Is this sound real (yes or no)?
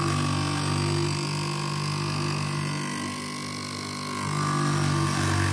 yes